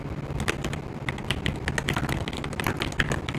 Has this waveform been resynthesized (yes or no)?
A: no